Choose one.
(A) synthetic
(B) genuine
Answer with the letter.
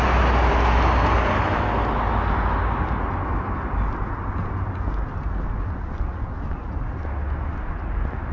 B